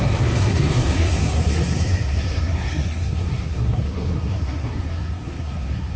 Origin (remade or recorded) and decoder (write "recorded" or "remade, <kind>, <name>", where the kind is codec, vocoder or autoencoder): remade, codec, SNAC